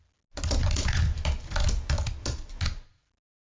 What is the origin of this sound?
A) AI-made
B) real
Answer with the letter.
B